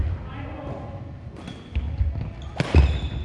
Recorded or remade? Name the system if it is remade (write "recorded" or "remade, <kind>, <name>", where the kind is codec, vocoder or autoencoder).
recorded